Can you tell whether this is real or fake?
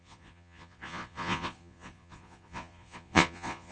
fake